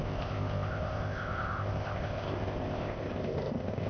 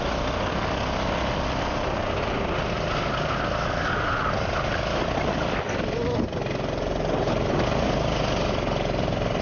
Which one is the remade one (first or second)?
first